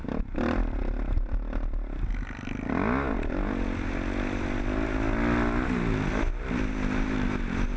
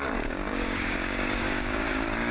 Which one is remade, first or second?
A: second